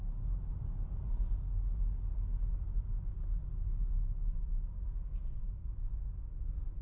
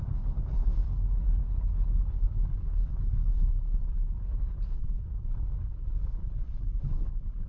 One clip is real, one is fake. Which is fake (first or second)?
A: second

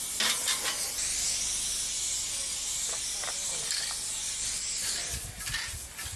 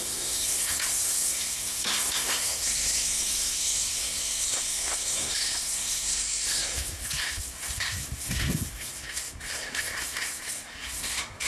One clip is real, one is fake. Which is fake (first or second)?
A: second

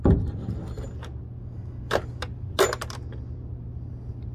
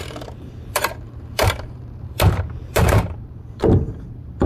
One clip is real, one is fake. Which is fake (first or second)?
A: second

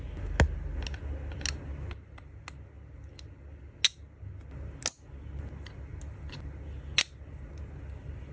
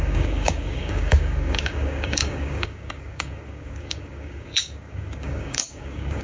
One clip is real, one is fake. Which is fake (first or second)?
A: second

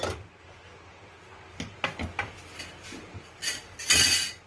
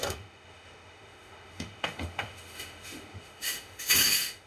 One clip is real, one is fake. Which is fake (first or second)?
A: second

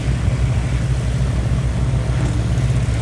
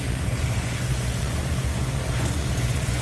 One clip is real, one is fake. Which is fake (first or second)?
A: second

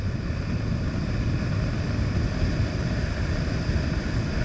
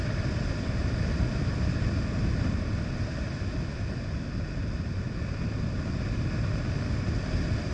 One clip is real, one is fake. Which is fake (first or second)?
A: first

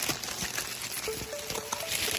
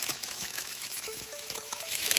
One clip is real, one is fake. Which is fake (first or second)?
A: second